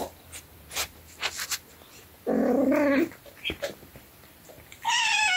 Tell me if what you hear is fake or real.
real